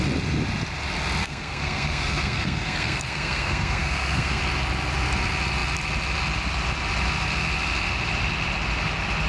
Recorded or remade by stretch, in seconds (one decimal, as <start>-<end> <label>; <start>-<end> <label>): 0.0-1.2 recorded; 1.2-4.4 remade; 4.4-9.3 recorded

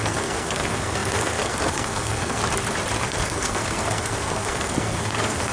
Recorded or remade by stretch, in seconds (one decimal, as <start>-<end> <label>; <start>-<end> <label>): 0.0-2.4 remade; 2.4-3.0 recorded; 3.0-5.5 remade

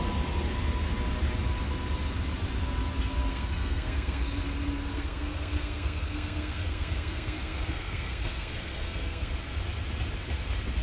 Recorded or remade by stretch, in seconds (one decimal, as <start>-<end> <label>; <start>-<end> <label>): 0.0-3.3 recorded; 3.3-4.2 remade; 4.2-4.9 recorded; 4.9-9.3 remade; 9.3-10.8 recorded